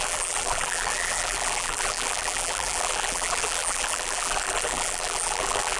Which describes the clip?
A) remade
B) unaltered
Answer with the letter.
A